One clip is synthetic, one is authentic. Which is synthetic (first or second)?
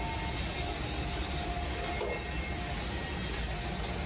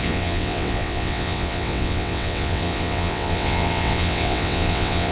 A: second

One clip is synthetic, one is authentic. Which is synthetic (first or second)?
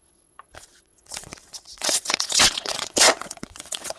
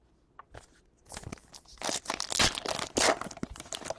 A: first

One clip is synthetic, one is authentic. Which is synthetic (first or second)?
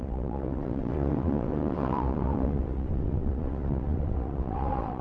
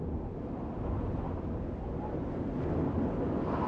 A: first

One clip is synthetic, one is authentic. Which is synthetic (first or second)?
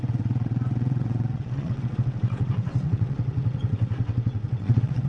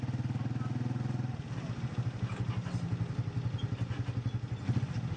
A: first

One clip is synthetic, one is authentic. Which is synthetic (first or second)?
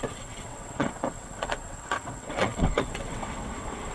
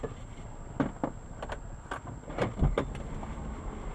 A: first